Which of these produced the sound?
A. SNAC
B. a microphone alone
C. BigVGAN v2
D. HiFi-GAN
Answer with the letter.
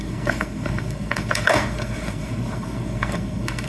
A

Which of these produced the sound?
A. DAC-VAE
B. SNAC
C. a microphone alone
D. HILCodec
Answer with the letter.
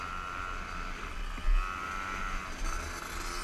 C